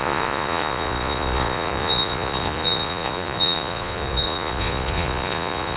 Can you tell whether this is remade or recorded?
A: remade